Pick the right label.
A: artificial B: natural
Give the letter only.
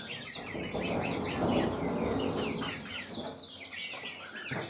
B